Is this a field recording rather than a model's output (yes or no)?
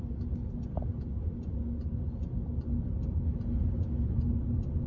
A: yes